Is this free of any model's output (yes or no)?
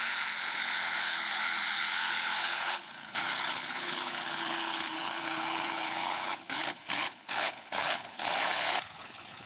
no